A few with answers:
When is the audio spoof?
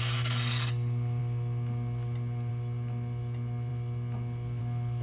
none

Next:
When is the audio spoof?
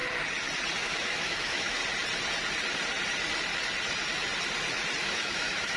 0.8-1.8 (autoencoder, DAC-VAE); 5.0-5.8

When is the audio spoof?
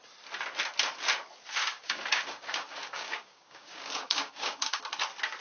1.6-4.8 (codec, DAC)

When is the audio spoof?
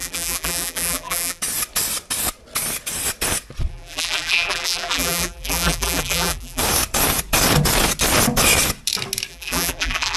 0.0-1.4 (vocoder, BigVGAN v2); 3.7-6.6; 9.3-10.2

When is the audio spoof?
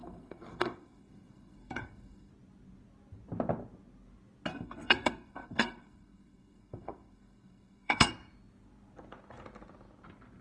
0.0-2.3 (codec, SNAC); 4.5-8.1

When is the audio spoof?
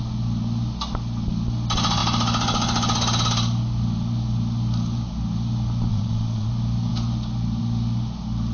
5.9-6.5 (vocoder, Vocos)